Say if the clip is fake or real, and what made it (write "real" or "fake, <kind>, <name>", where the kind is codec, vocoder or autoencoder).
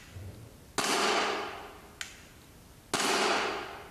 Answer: real